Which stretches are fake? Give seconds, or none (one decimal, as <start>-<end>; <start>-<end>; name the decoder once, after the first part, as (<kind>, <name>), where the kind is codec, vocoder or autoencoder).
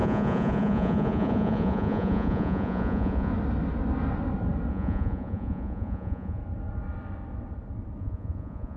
0.0-3.3 (vocoder, Vocos); 4.7-6.4; 8.0-8.8